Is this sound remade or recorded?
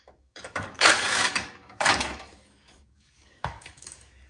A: remade